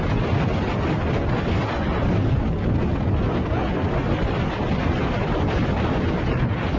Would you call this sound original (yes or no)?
yes